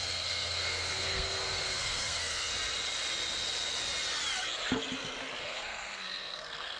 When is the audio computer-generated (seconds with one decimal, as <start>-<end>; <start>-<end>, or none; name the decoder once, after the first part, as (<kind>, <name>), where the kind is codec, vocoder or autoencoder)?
0.0-2.5 (codec, SNAC); 5.4-6.8